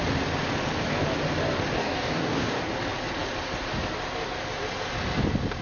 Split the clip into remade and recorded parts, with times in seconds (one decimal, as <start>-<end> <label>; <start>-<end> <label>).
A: 0.0-1.8 recorded; 1.8-2.6 remade; 2.6-5.6 recorded